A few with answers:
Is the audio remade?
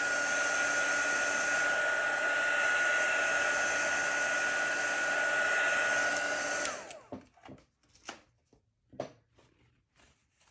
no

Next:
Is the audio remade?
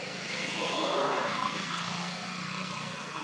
yes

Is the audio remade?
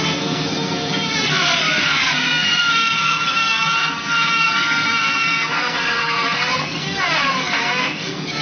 yes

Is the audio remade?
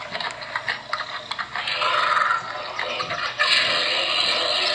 no